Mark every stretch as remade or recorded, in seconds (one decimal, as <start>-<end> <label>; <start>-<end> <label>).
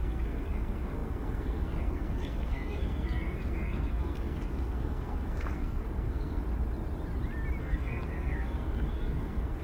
0.0-6.4 remade; 6.4-7.6 recorded; 7.6-9.6 remade